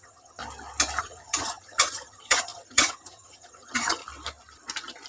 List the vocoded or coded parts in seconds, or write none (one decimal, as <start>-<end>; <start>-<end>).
0.0-0.4; 1.0-4.0